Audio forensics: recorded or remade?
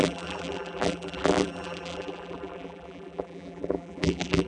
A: remade